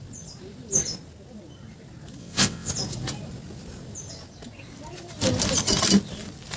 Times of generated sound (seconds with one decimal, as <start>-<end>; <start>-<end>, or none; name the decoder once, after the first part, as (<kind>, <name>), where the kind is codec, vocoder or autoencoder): 2.2-2.7 (vocoder, WaveNeXt)